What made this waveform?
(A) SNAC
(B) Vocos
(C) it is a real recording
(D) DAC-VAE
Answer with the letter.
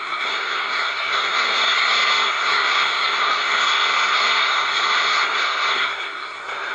A